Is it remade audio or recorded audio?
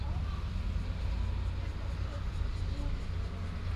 recorded